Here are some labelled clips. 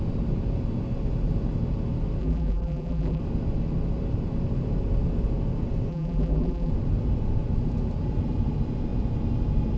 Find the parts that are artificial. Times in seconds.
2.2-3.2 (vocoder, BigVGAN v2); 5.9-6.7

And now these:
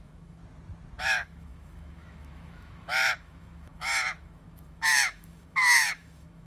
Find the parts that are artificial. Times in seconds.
0.0-0.4 (autoencoder, DAC-VAE); 1.0-6.5

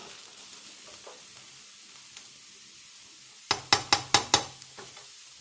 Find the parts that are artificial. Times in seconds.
none

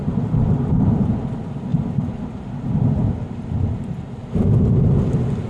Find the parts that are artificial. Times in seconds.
none

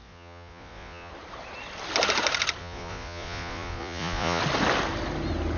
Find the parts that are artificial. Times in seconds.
0.0-1.1 (vocoder, Vocos); 2.6-4.4